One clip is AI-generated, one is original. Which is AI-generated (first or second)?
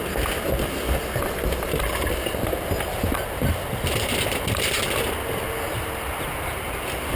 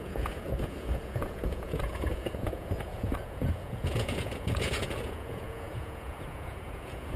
second